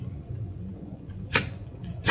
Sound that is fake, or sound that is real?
fake